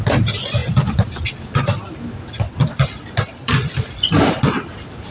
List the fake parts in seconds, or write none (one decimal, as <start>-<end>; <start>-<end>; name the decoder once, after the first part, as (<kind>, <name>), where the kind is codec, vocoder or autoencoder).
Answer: none